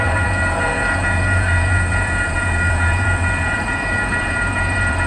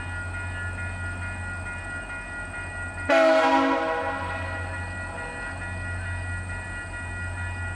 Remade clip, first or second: first